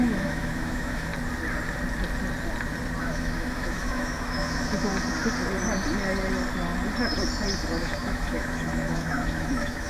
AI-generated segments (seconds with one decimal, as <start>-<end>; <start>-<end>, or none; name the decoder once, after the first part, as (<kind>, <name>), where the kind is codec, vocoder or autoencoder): 0.0-1.1 (autoencoder, DAC-VAE); 3.0-4.9; 7.8-9.9